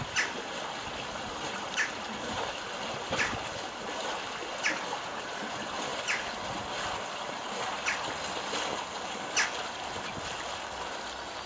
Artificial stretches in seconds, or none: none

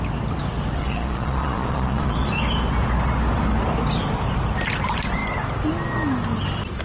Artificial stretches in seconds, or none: 0.8-2.3

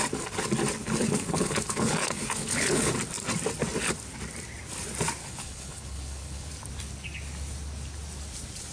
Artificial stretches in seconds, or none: 0.8-2.9; 5.2-6.5

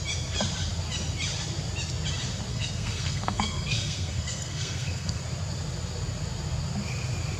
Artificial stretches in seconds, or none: 2.5-5.2

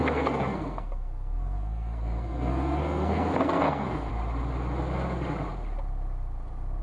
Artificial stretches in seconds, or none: 0.0-4.1

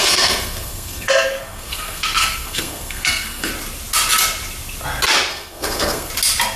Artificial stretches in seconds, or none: 0.0-3.5; 5.3-6.1